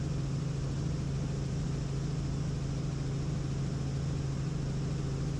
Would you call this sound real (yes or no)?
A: yes